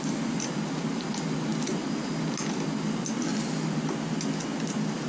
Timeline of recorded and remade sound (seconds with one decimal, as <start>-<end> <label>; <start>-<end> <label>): 0.0-5.1 recorded